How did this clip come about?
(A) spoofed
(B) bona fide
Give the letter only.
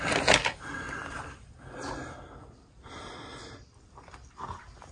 B